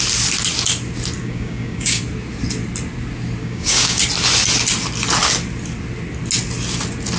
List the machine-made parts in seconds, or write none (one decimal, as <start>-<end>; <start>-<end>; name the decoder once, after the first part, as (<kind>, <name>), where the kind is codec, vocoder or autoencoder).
1.2-2.0 (codec, DAC); 3.4-4.0